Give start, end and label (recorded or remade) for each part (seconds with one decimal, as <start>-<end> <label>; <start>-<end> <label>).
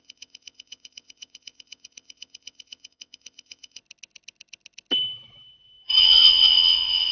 0.0-3.8 remade; 3.8-6.0 recorded; 6.0-7.1 remade